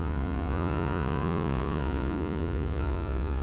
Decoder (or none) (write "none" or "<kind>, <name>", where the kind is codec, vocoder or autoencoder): vocoder, Vocos